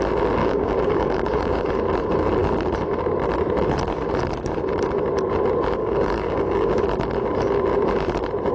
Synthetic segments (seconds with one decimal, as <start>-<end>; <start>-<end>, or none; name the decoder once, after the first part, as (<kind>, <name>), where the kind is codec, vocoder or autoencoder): 0.4-1.7 (codec, DAC); 5.8-6.7